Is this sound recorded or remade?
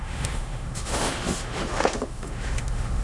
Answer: remade